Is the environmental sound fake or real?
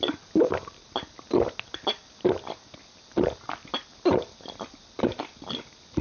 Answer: real